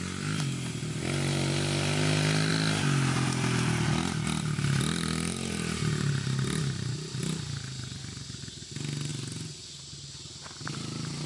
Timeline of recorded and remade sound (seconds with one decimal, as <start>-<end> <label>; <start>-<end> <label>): 0.0-11.3 recorded